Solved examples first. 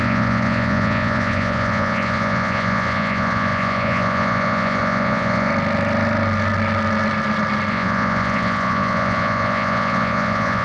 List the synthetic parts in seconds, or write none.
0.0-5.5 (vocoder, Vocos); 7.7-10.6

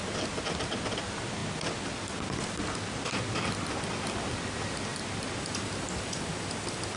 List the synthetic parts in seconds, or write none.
none

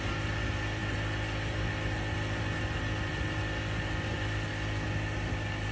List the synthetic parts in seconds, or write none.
none